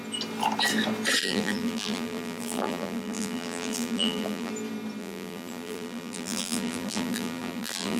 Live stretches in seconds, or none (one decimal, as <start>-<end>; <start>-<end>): 0.0-1.2; 4.5-5.0